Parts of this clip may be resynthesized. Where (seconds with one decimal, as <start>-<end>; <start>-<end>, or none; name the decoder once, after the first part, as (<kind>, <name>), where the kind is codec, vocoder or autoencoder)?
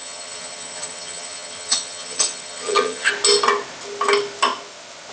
0.0-3.1 (vocoder, HiFi-GAN)